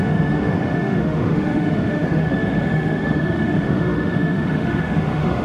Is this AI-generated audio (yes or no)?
yes